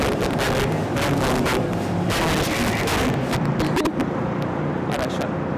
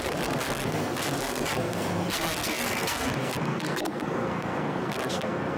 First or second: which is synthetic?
second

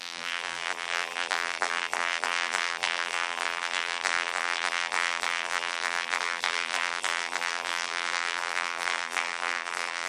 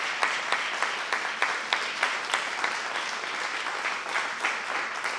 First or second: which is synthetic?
first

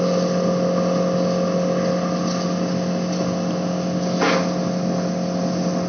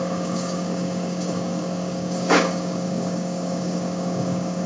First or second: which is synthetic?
second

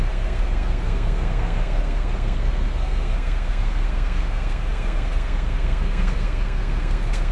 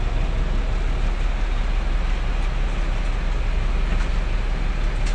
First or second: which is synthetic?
first